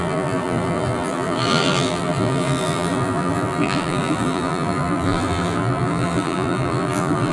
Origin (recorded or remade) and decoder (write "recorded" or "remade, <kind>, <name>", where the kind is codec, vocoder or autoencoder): remade, vocoder, BigVGAN v2